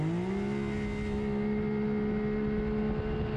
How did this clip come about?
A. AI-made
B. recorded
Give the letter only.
B